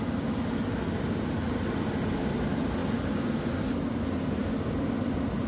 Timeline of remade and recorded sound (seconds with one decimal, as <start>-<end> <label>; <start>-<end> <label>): 0.0-5.5 recorded